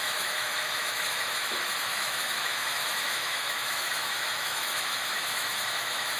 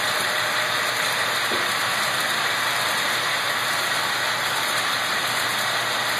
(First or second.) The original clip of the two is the second